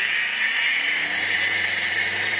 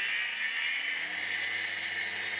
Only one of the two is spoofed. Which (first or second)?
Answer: first